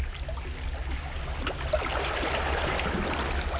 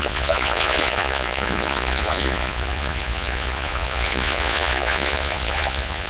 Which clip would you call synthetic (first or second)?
second